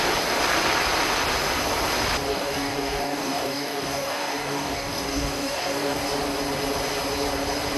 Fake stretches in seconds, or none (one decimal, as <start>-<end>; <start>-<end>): 2.3-6.0